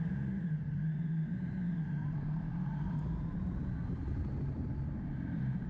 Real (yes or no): no